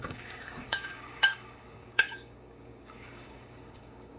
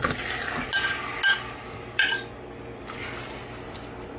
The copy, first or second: first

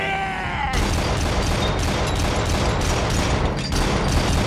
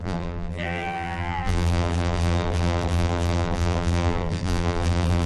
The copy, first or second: second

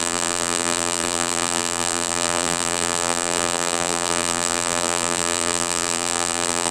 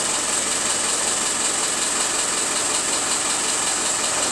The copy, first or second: first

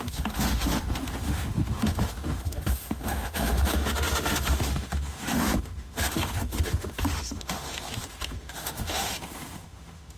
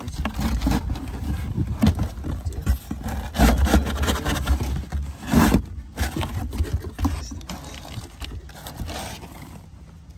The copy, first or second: first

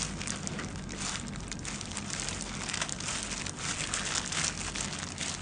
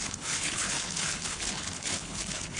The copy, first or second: second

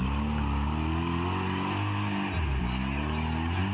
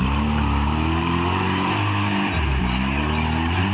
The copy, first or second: second